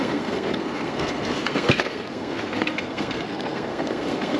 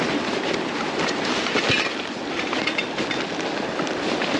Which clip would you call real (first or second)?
second